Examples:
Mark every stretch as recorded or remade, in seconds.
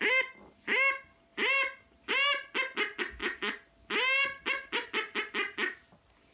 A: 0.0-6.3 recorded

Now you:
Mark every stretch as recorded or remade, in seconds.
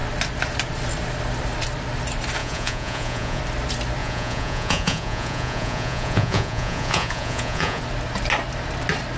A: 0.0-2.4 recorded; 2.4-3.4 remade; 3.4-4.0 recorded; 4.0-7.8 remade; 7.8-9.2 recorded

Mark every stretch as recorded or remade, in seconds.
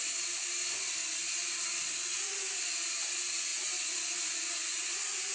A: 0.0-1.0 recorded; 1.0-1.6 remade; 1.6-5.3 recorded